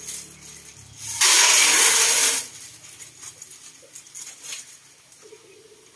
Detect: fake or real real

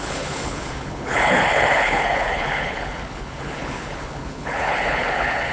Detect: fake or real fake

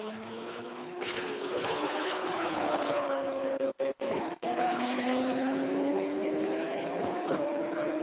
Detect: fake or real fake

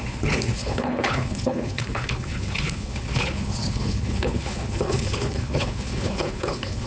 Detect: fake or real fake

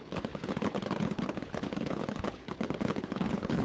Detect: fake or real fake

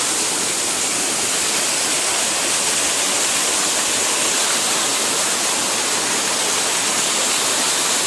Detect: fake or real real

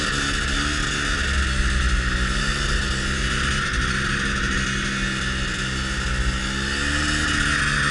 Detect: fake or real real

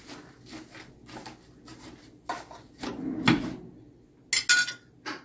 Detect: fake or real real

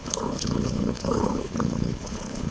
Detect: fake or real fake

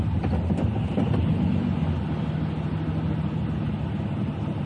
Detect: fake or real real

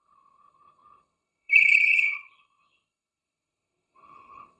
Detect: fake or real fake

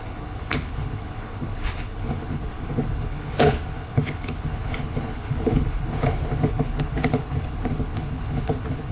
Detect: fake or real fake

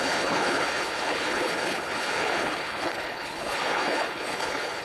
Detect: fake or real fake